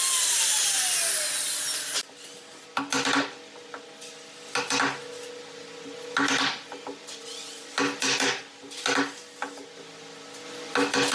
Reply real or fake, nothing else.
real